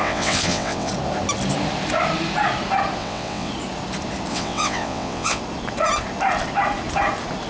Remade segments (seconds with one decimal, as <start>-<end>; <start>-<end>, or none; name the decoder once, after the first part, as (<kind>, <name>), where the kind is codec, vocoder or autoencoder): 0.0-0.9 (vocoder, WaveNeXt); 3.0-3.5; 4.3-5.4